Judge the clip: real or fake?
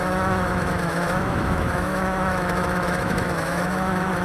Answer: fake